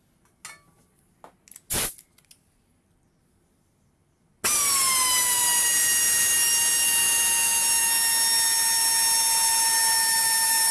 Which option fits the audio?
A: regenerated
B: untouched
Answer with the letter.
B